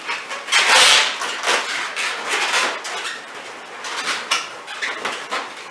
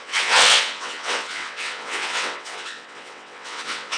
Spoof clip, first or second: second